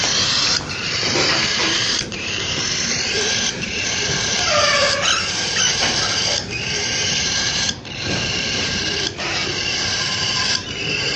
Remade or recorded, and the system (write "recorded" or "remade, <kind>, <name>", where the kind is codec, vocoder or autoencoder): remade, vocoder, BigVGAN v2